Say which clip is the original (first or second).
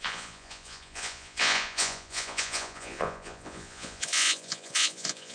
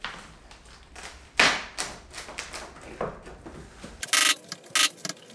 second